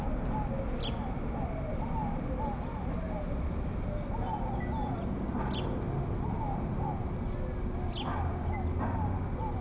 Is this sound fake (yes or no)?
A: no